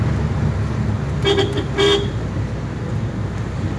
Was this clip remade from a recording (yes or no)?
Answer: no